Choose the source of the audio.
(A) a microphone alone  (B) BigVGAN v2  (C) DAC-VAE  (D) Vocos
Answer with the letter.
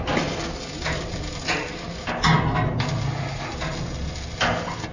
A